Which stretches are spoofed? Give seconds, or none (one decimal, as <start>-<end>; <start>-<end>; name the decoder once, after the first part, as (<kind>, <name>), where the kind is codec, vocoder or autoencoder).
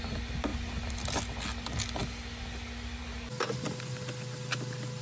none